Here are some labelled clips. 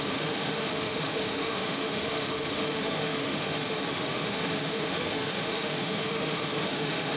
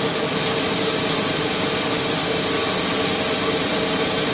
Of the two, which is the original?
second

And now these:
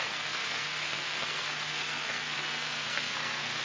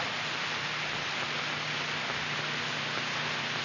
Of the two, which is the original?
second